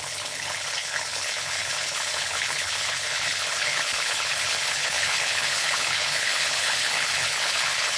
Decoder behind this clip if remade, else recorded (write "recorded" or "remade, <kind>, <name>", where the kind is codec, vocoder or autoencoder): remade, codec, HILCodec